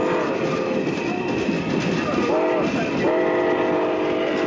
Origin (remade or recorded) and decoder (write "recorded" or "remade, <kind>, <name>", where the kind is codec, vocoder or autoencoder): recorded